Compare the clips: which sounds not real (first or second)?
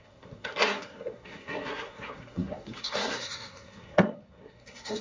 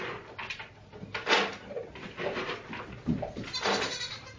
first